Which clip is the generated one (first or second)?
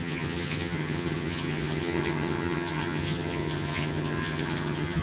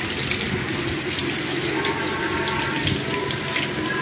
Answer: first